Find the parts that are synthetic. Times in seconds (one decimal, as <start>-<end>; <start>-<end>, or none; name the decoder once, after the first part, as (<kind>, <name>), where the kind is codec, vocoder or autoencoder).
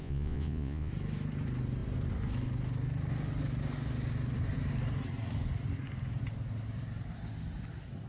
0.0-0.9 (vocoder, Vocos)